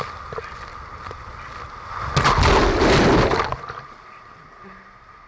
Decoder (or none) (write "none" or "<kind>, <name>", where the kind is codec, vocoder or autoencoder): none